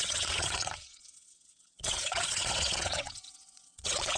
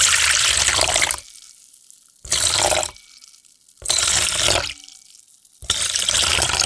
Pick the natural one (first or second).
second